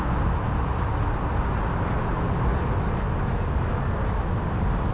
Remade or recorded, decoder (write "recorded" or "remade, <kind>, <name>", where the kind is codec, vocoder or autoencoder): recorded